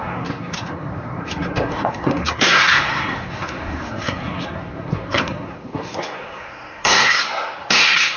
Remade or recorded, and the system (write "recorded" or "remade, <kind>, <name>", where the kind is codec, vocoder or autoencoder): remade, codec, SNAC